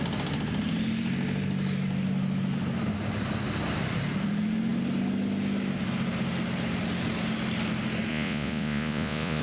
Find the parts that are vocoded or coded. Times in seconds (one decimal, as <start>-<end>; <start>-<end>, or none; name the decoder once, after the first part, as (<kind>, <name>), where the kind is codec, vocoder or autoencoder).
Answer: 8.1-9.4 (vocoder, Vocos)